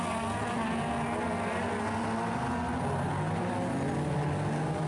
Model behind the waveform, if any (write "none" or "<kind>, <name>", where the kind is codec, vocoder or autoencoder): none